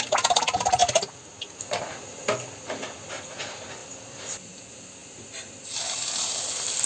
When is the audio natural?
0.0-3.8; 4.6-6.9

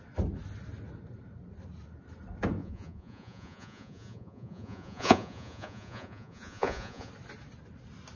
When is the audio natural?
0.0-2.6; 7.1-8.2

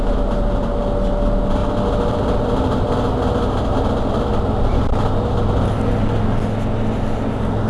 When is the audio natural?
0.0-7.7

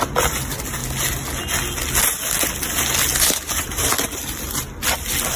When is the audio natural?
0.0-3.1; 4.1-5.4

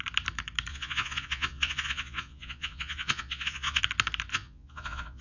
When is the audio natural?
0.0-0.7; 3.8-4.3

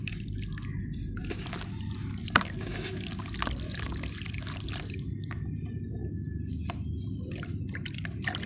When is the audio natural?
2.0-3.2; 6.0-6.9

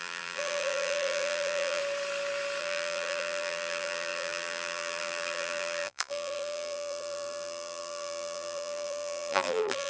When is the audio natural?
1.8-2.6

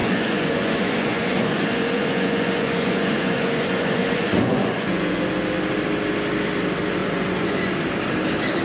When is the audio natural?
5.2-7.0; 7.7-8.6